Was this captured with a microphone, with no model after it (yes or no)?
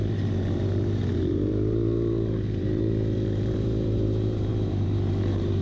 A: no